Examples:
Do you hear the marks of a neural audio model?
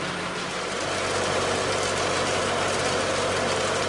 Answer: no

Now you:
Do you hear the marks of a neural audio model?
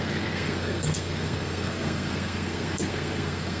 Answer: yes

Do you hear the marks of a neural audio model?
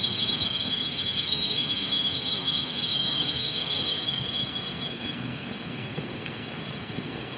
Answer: yes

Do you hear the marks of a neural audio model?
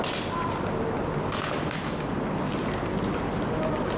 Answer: no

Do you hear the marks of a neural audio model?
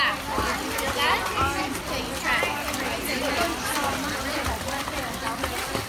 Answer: no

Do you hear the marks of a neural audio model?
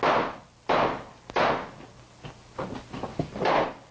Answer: no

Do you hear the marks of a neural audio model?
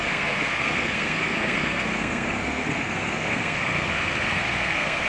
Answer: yes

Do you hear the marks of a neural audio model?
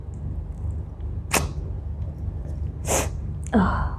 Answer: no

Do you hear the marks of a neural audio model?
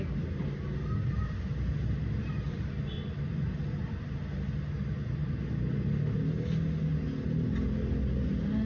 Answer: no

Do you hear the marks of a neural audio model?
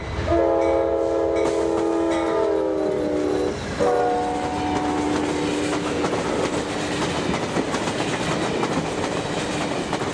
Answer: no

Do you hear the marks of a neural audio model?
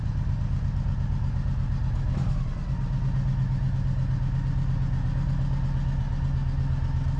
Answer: no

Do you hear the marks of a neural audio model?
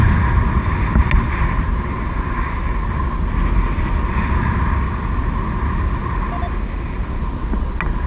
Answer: no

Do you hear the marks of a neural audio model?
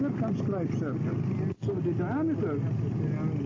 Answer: no